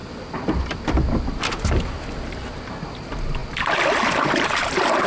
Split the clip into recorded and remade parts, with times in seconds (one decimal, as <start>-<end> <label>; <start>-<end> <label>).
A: 0.0-2.7 remade; 2.7-3.4 recorded; 3.4-5.1 remade